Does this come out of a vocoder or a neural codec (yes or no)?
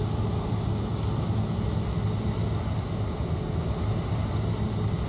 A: no